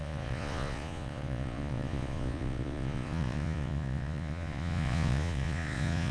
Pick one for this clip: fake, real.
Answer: fake